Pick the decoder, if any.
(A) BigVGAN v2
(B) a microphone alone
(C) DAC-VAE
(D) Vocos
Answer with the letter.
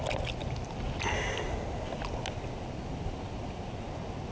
B